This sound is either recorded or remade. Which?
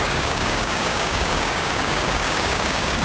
remade